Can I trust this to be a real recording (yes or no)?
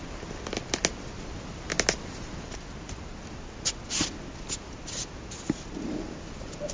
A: yes